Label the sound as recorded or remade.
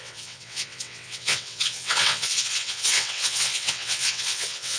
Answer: remade